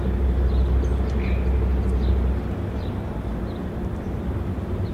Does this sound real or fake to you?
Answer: real